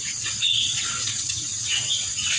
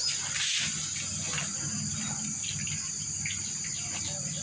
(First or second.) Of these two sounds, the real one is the second